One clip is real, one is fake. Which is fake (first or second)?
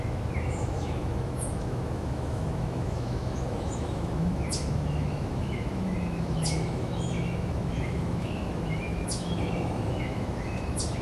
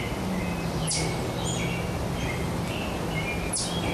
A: first